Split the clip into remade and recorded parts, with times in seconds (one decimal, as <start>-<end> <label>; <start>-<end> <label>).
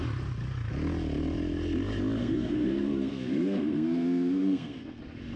0.0-2.2 recorded; 2.2-5.0 remade; 5.0-5.4 recorded